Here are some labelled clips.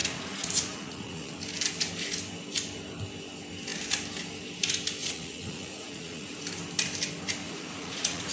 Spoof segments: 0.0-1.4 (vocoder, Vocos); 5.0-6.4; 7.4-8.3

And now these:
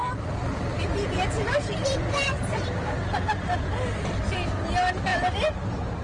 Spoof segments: 0.0-3.0 (vocoder, BigVGAN v2)

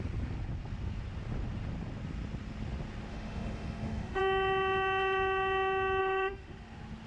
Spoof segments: 3.1-4.2 (autoencoder, DAC-VAE); 6.0-6.5

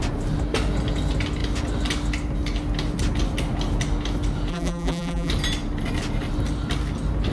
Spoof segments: 4.5-5.3 (vocoder, BigVGAN v2)

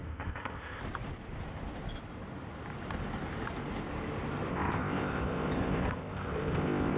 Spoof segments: 0.0-0.8 (codec, ZipCodec); 4.5-7.0